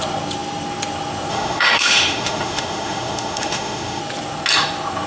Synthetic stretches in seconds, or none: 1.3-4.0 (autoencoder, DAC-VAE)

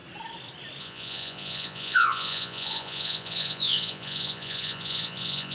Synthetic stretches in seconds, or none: 0.8-5.5 (vocoder, Vocos)

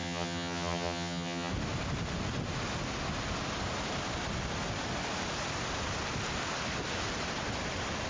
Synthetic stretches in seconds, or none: 0.0-1.5 (vocoder, HiFi-GAN)

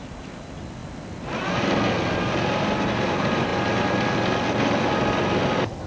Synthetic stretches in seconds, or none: none

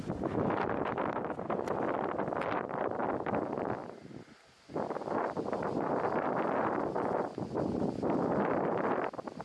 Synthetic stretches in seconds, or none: none

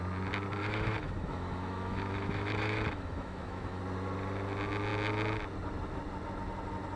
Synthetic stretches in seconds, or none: 0.6-3.8 (autoencoder, DAC-VAE)

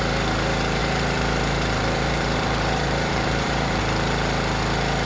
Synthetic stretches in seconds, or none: 0.8-3.8 (vocoder, BigVGAN v2)